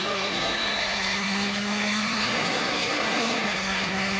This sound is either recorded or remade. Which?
remade